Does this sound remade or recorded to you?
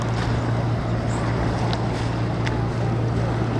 recorded